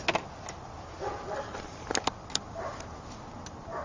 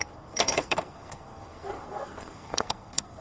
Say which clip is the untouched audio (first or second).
first